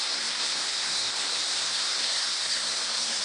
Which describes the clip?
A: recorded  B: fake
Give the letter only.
B